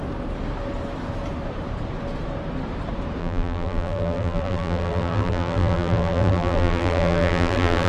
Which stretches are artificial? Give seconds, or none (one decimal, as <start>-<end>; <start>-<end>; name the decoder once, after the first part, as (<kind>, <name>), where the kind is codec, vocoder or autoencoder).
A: 3.2-7.9 (vocoder, BigVGAN v2)